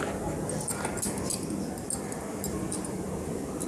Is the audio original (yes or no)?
yes